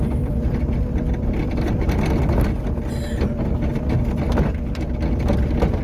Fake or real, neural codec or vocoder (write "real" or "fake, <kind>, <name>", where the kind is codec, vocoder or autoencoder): real